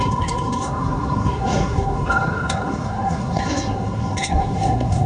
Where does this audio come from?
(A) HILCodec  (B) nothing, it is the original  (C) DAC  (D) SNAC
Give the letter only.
D